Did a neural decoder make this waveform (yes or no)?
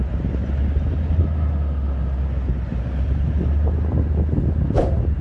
no